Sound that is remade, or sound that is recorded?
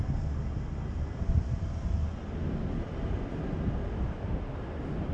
recorded